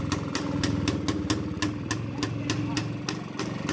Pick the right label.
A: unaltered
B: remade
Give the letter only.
A